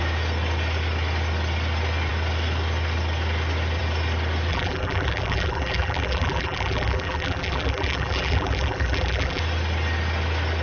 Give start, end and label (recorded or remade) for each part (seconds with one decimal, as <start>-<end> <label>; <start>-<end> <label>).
0.0-4.5 recorded; 4.5-9.4 remade; 9.4-10.6 recorded